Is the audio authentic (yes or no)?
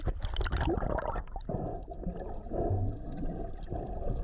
yes